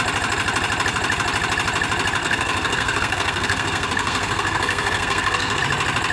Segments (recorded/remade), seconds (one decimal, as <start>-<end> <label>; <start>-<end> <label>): 0.0-2.2 recorded; 2.2-5.6 remade; 5.6-6.1 recorded